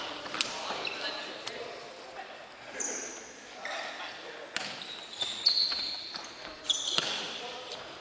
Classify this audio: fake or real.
real